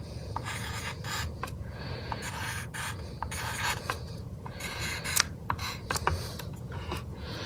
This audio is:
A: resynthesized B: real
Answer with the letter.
A